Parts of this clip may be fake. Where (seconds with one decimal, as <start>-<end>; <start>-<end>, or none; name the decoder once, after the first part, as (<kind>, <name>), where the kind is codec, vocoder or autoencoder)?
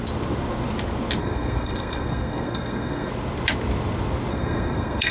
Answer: 1.2-3.1 (codec, SNAC); 4.3-5.1